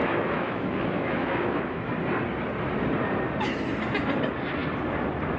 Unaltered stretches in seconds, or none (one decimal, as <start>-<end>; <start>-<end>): 1.8-5.4